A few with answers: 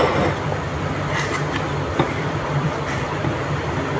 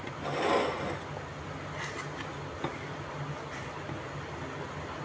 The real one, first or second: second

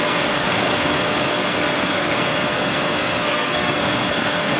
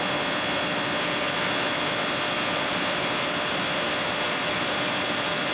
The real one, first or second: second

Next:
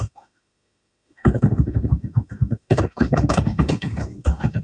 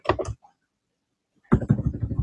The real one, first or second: second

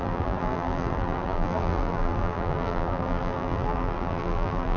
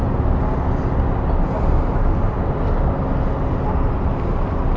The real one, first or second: second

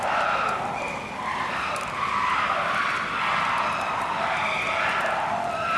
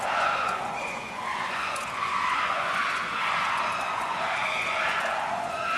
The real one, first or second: first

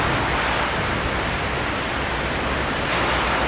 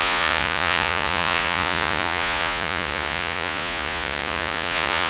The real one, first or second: first